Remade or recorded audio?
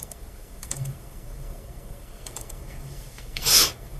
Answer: remade